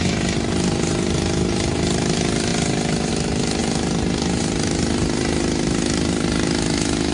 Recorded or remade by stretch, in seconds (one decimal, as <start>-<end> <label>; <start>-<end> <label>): 0.0-7.1 recorded